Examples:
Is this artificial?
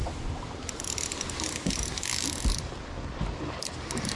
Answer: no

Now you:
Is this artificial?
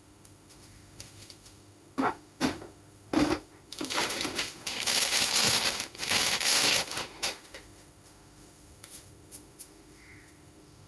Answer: yes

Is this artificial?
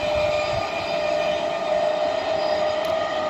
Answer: no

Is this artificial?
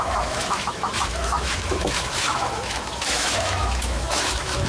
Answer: yes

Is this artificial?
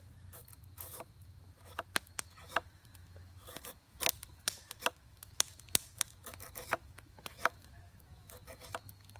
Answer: yes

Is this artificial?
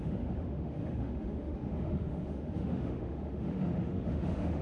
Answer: yes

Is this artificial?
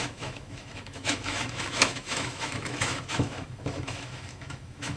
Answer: yes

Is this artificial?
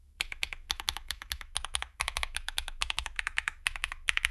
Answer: yes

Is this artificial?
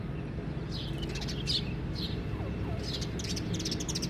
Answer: no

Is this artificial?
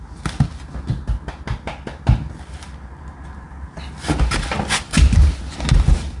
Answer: no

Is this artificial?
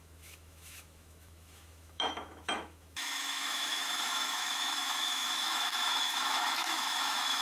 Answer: yes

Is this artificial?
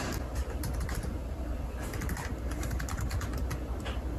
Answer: no